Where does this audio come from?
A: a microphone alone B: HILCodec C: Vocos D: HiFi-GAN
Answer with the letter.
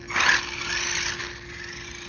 A